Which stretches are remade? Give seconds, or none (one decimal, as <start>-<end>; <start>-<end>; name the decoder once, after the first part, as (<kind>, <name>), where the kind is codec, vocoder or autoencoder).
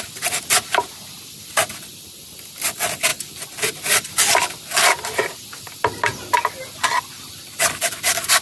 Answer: none